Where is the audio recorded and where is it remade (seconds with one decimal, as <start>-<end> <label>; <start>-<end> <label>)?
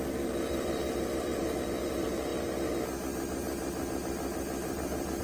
0.0-2.3 remade; 2.3-5.2 recorded